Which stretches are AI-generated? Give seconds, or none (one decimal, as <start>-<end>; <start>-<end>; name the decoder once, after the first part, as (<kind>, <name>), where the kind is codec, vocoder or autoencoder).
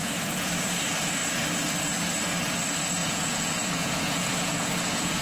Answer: 0.0-0.5 (vocoder, Vocos); 3.0-5.2